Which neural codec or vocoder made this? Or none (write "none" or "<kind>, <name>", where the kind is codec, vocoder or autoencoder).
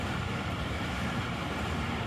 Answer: vocoder, BigVGAN v2